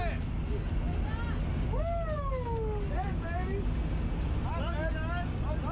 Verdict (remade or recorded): recorded